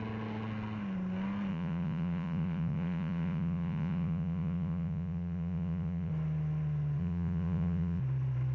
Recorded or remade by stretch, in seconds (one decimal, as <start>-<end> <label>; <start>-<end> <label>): 0.0-1.5 recorded; 1.5-6.1 remade; 6.1-7.0 recorded; 7.0-8.0 remade; 8.0-8.5 recorded